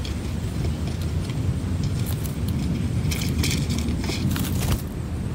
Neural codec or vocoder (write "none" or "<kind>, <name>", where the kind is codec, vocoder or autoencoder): none